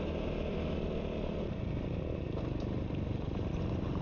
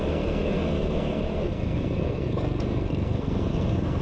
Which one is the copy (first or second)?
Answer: second